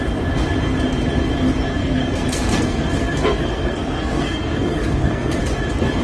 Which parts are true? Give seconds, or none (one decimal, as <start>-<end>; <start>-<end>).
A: 0.0-1.8; 5.4-6.0